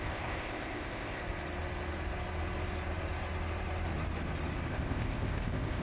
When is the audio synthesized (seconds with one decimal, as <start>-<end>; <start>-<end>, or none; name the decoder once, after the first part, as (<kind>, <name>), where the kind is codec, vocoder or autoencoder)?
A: 0.0-1.2 (codec, ZipCodec); 4.7-5.8

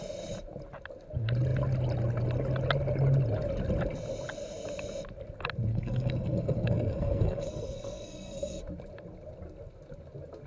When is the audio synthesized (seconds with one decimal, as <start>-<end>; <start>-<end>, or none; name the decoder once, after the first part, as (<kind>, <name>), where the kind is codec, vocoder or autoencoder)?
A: 5.7-8.6 (codec, SNAC)